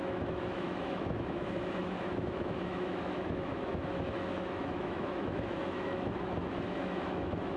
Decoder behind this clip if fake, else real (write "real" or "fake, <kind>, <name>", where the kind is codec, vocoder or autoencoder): fake, autoencoder, DAC-VAE